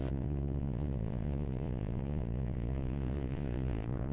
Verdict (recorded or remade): remade